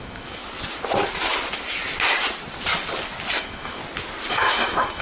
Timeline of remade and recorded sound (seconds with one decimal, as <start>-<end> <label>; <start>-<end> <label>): 0.0-0.4 remade; 0.4-3.4 recorded; 3.4-3.8 remade; 3.8-4.3 recorded; 4.3-5.0 remade